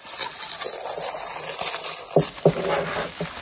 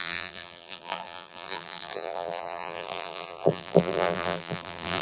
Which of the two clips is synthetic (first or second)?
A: second